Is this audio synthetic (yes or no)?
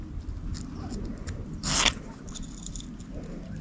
no